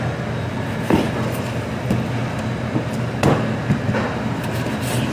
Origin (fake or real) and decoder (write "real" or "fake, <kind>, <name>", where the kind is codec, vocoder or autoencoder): real